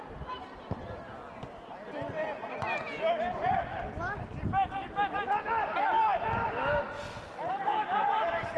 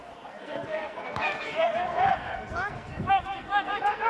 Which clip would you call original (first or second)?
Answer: first